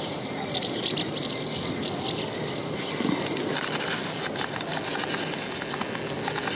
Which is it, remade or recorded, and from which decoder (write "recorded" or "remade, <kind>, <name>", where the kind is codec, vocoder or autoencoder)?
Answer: recorded